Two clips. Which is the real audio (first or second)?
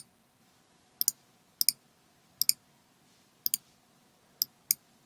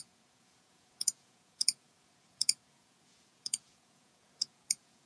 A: first